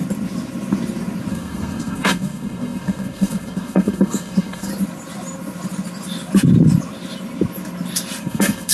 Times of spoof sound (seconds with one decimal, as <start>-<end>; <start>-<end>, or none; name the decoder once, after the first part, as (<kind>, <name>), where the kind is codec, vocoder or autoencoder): 1.3-4.7 (codec, SNAC); 8.2-8.7